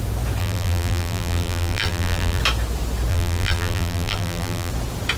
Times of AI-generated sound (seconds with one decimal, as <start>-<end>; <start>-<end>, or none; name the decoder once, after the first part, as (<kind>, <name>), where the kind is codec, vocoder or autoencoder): 0.4-2.4 (vocoder, BigVGAN v2); 3.1-4.7